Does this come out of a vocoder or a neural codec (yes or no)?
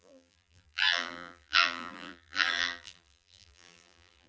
yes